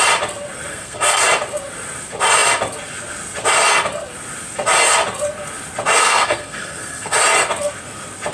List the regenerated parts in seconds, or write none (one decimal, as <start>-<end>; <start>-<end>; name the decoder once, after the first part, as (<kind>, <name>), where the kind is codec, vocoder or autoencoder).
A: 0.7-1.2 (codec, SNAC); 6.0-7.2